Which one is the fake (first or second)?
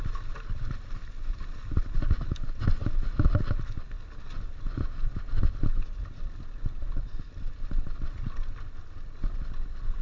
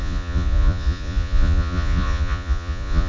second